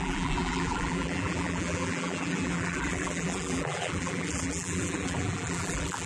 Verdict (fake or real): fake